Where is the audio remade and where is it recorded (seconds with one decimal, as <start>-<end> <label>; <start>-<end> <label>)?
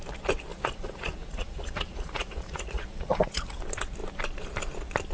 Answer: 0.0-0.5 recorded; 0.5-3.6 remade; 3.6-5.1 recorded